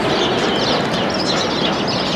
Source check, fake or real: real